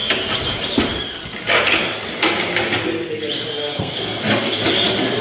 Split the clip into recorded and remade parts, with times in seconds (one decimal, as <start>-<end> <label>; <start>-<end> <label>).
0.0-3.6 recorded; 3.6-4.2 remade; 4.2-5.2 recorded

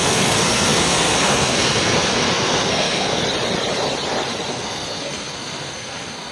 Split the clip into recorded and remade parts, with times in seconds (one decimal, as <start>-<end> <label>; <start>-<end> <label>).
0.0-3.2 remade; 3.2-4.5 recorded; 4.5-6.3 remade

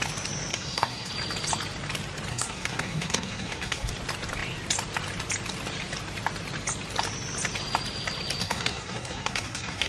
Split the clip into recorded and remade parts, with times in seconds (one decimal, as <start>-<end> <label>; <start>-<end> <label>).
0.0-0.5 recorded; 0.5-1.1 remade; 1.1-2.3 recorded; 2.3-3.9 remade; 3.9-8.4 recorded; 8.4-9.9 remade

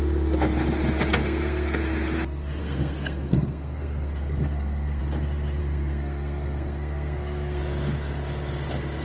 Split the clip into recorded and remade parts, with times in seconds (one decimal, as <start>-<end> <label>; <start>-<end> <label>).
0.0-1.2 recorded; 1.2-1.8 remade; 1.8-2.6 recorded; 2.6-5.0 remade; 5.0-5.6 recorded; 5.6-7.6 remade; 7.6-9.0 recorded

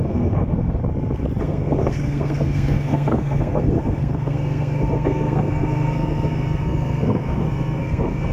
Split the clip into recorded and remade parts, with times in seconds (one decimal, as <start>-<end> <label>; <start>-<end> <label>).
0.0-0.8 remade; 0.8-1.4 recorded; 1.4-8.3 remade

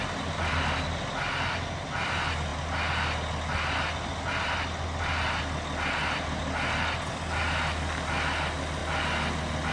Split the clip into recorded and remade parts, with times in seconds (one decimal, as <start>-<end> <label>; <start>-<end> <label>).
0.0-9.7 recorded

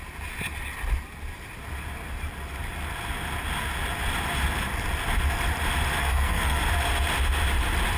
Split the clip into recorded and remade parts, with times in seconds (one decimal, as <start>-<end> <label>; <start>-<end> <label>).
0.0-6.0 recorded; 6.0-6.6 remade; 6.6-8.0 recorded